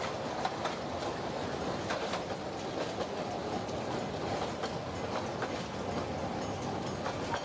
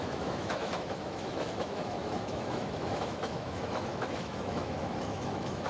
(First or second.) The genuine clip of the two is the first